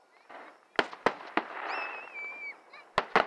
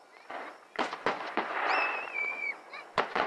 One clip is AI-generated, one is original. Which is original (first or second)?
first